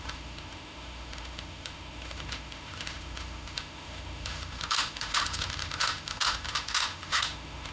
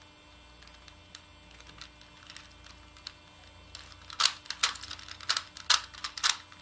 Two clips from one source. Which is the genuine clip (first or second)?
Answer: second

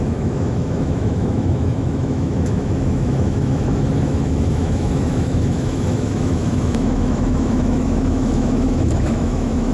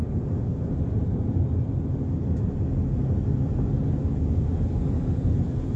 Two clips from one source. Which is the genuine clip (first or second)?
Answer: second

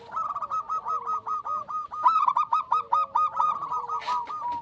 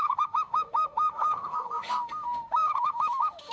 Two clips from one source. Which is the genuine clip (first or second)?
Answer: first